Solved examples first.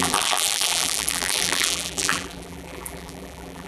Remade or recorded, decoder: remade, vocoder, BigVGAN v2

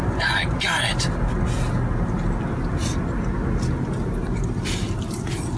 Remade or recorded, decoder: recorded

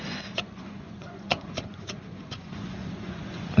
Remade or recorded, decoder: remade, vocoder, Vocos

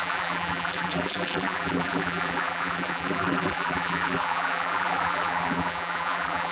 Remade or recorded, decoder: remade, vocoder, BigVGAN v2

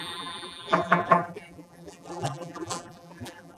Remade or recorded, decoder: remade, vocoder, BigVGAN v2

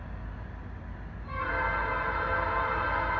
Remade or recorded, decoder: recorded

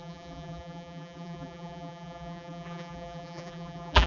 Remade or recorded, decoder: remade, vocoder, BigVGAN v2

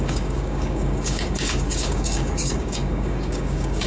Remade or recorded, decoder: remade, codec, DAC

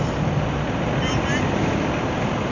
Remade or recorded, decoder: recorded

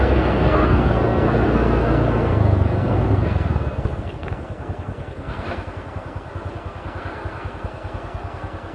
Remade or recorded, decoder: remade, codec, SNAC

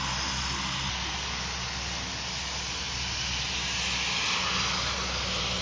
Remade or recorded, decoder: recorded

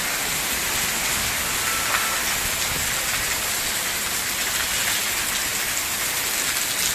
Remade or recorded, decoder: recorded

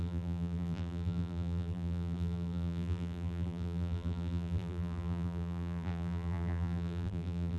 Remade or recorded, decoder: remade, vocoder, BigVGAN v2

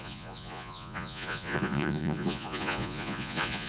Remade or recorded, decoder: remade, vocoder, Vocos